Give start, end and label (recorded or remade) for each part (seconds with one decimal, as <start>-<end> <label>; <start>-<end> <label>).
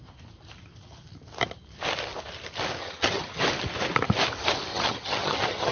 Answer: 0.0-2.8 recorded; 2.8-3.4 remade; 3.4-4.7 recorded; 4.7-5.7 remade